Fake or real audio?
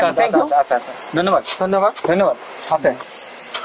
real